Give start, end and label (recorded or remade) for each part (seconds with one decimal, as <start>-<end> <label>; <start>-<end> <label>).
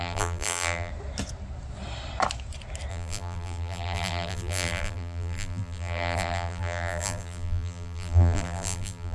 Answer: 0.0-0.9 remade; 0.9-2.9 recorded; 2.9-9.1 remade